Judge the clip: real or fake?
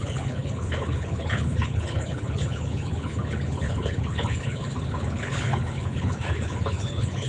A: fake